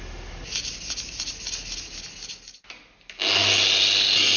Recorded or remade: recorded